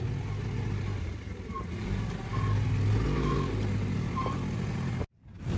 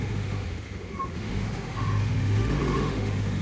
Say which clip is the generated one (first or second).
second